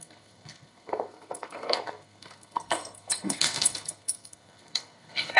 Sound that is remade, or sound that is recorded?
remade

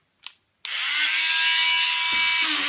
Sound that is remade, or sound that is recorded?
recorded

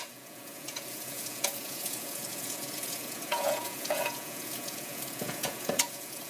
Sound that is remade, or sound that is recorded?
remade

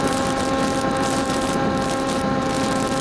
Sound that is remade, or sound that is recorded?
remade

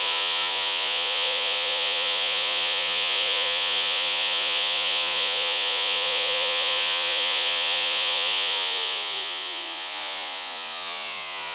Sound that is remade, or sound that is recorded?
remade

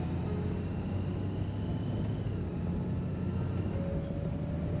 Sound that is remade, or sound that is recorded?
recorded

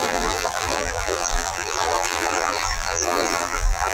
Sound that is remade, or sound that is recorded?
remade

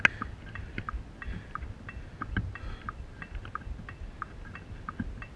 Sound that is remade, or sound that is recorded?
recorded